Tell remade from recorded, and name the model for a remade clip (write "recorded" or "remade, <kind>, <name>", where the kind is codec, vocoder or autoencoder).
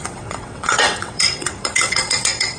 remade, vocoder, WaveNeXt